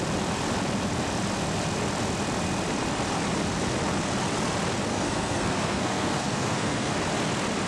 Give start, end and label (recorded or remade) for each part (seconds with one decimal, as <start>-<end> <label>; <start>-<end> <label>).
0.0-4.9 recorded; 4.9-6.9 remade; 6.9-7.7 recorded